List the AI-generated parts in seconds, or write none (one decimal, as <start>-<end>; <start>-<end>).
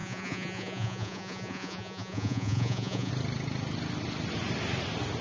0.0-3.1